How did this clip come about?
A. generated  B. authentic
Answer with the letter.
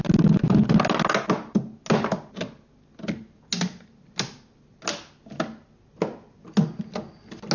B